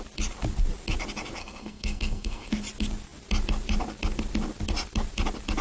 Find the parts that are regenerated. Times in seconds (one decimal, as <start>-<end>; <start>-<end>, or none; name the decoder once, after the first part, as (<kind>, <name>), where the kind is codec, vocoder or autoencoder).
1.4-2.5 (codec, SNAC)